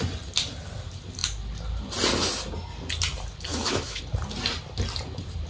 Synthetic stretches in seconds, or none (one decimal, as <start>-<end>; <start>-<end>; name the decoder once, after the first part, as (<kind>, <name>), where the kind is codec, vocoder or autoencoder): 3.5-4.0 (autoencoder, DAC-VAE)

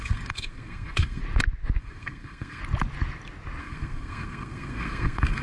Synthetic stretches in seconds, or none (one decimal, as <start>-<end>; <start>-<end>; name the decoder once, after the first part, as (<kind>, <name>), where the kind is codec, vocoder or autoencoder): 0.0-1.2 (codec, SNAC); 1.8-2.6; 3.6-5.4

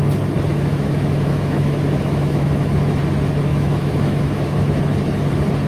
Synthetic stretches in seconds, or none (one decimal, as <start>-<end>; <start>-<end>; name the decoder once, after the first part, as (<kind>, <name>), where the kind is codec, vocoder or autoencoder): 0.5-3.0 (autoencoder, DAC-VAE); 3.5-4.8

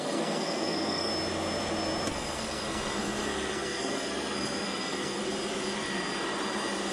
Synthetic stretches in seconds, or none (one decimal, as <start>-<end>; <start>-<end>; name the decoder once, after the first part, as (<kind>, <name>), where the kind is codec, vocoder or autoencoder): 0.0-1.1 (codec, SNAC); 2.1-5.2

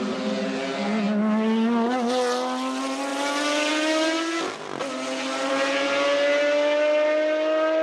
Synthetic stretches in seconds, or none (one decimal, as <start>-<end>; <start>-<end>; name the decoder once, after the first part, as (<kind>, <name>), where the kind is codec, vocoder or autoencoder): none